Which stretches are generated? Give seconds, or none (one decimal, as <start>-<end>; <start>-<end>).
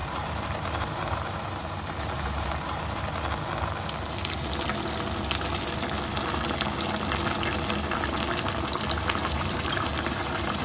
0.0-3.1; 9.2-10.6